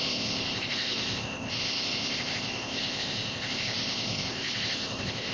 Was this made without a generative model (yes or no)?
no